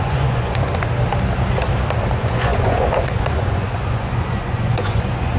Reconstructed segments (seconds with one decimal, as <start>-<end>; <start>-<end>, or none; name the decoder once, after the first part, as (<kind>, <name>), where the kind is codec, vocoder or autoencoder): 0.0-0.7 (vocoder, Vocos); 2.1-5.4